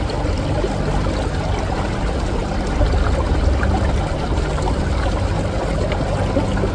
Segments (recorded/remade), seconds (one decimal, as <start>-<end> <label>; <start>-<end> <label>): 0.0-6.7 recorded